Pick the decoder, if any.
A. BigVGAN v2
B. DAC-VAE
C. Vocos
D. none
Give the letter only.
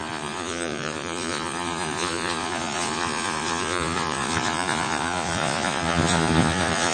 C